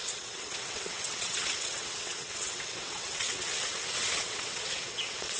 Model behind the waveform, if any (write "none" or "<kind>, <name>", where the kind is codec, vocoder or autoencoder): vocoder, WaveNeXt